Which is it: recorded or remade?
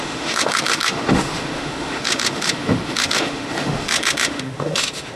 remade